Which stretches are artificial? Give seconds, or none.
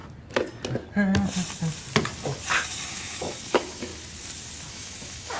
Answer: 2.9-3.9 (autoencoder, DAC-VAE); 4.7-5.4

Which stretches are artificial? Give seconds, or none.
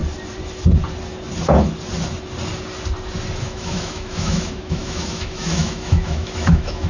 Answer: 3.4-6.9 (autoencoder, DAC-VAE)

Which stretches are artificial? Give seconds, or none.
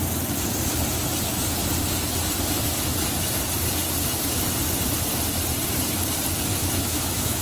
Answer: 6.5-7.4 (autoencoder, DAC-VAE)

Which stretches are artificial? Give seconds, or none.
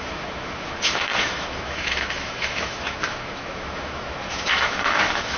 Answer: 0.0-5.4 (autoencoder, DAC-VAE)